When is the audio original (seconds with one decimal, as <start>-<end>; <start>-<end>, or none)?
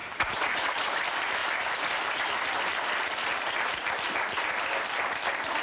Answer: 0.8-5.6